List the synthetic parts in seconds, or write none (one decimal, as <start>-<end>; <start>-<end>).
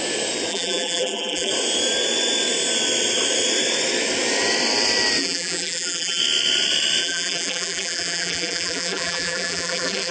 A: 0.5-1.5; 5.2-6.2; 7.0-10.1